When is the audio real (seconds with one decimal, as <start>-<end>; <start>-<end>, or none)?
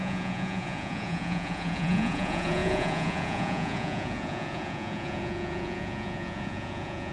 none